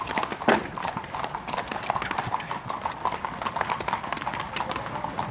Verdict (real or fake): real